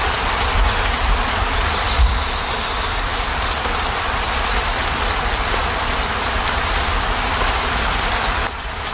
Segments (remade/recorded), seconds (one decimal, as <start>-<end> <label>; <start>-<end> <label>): 0.0-8.9 remade